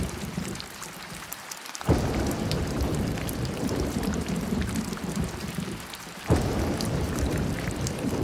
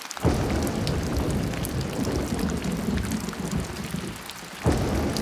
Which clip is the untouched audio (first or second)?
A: second